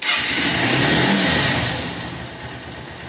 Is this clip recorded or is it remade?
recorded